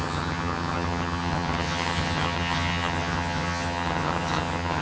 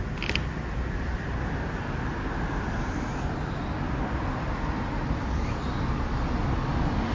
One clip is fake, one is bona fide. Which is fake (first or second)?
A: first